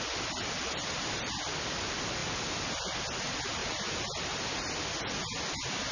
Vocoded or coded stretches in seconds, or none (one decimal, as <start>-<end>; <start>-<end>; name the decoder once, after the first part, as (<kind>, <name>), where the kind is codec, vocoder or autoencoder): 3.6-5.0 (vocoder, BigVGAN v2)